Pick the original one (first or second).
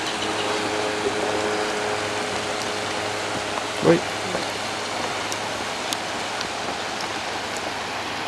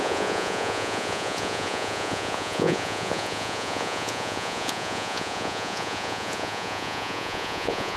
first